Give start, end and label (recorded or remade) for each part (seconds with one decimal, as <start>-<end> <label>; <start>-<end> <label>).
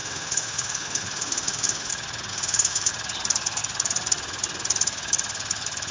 0.0-1.9 remade; 1.9-2.3 recorded; 2.3-2.9 remade; 2.9-5.9 recorded